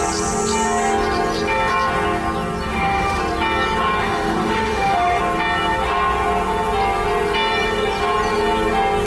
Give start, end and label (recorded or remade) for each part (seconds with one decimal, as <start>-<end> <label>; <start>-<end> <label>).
0.0-2.7 recorded; 2.7-3.2 remade; 3.2-4.0 recorded; 4.0-5.2 remade; 5.2-9.1 recorded